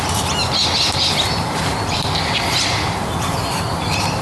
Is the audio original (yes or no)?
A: yes